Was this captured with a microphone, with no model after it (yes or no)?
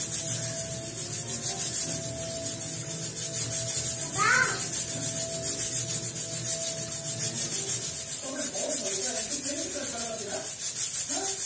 yes